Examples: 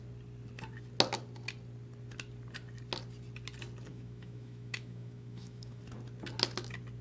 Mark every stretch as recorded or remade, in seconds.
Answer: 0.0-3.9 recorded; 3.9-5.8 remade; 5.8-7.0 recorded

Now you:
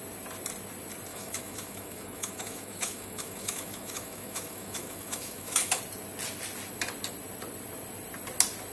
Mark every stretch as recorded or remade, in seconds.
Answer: 0.0-1.1 recorded; 1.1-5.8 remade; 5.8-8.7 recorded

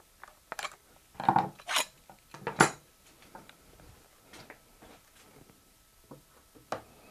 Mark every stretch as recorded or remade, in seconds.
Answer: 0.0-7.1 recorded

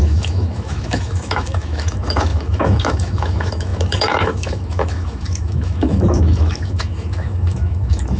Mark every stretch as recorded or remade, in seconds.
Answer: 0.0-8.2 remade